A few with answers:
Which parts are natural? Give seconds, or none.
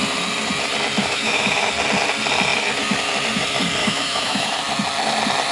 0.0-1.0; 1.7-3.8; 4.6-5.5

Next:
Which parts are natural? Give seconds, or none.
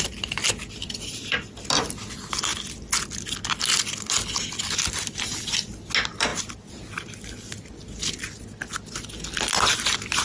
0.0-10.2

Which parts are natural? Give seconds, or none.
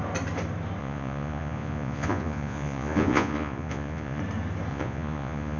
0.0-0.8; 4.2-4.7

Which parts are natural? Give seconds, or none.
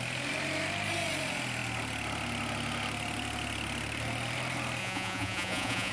0.0-4.8